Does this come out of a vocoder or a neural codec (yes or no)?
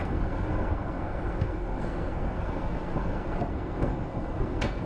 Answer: yes